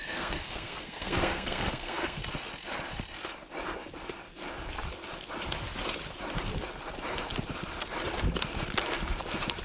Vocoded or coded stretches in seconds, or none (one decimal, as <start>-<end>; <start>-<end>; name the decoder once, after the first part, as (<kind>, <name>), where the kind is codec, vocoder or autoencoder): 0.0-2.2 (codec, SNAC)